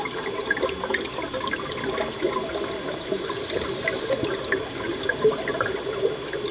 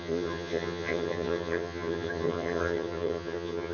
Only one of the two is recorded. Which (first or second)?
first